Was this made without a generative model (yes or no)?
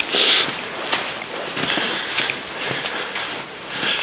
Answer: yes